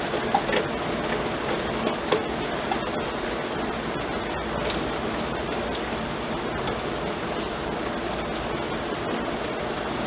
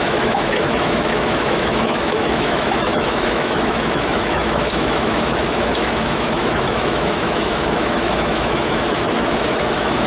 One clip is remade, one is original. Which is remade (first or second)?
second